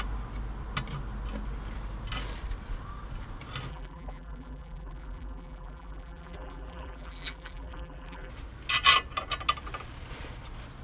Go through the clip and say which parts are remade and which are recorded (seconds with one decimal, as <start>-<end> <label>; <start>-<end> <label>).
0.0-3.7 recorded; 3.7-8.3 remade; 8.3-10.8 recorded